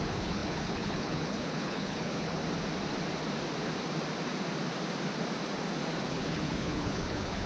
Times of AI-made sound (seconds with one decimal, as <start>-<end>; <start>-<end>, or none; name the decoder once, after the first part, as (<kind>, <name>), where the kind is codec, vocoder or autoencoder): 0.0-2.4 (codec, HILCodec); 6.1-7.5

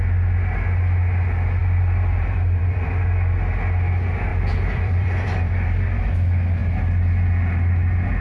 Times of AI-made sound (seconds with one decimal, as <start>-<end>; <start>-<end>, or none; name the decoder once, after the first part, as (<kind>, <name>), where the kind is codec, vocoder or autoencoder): 1.6-2.8 (vocoder, BigVGAN v2); 4.3-6.1

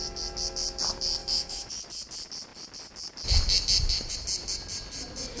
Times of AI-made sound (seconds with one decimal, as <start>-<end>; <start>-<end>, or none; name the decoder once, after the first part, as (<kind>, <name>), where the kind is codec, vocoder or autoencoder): 1.2-1.7 (autoencoder, DAC-VAE)